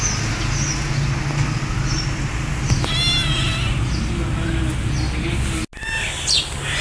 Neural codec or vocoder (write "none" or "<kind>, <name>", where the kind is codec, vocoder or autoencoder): none